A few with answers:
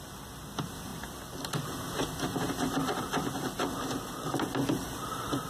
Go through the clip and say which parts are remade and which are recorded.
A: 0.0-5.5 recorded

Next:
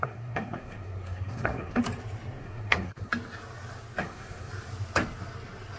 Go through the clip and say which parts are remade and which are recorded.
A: 0.0-1.8 remade; 1.8-2.4 recorded; 2.4-3.1 remade; 3.1-4.0 recorded; 4.0-4.5 remade; 4.5-5.8 recorded

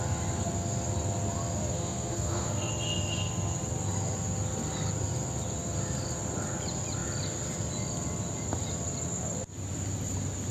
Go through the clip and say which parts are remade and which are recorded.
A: 0.0-1.7 recorded; 1.7-2.7 remade; 2.7-10.5 recorded

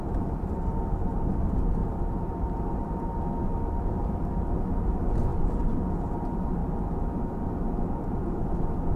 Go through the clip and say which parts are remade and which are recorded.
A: 0.0-1.8 recorded; 1.8-2.9 remade; 2.9-5.3 recorded; 5.3-5.9 remade; 5.9-9.0 recorded

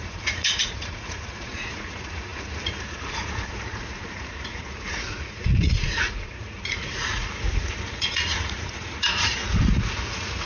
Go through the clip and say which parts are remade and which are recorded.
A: 0.0-10.5 remade

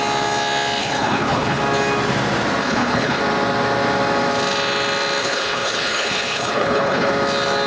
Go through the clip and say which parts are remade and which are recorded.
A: 0.0-0.8 recorded; 0.8-1.6 remade; 1.6-2.6 recorded; 2.6-3.2 remade; 3.2-5.2 recorded; 5.2-7.1 remade; 7.1-7.7 recorded

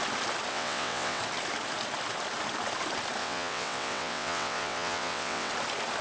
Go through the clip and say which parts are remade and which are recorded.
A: 0.0-0.5 recorded; 0.5-1.2 remade; 1.2-3.2 recorded; 3.2-5.5 remade; 5.5-6.0 recorded

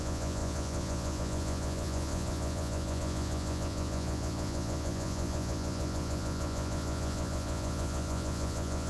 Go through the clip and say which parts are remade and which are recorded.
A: 0.0-8.9 remade